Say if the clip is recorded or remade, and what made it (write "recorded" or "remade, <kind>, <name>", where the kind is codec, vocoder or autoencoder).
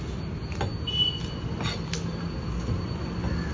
recorded